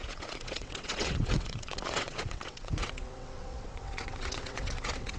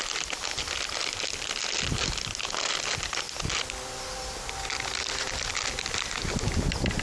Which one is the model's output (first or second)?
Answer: first